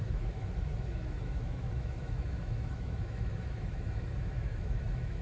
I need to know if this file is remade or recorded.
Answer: remade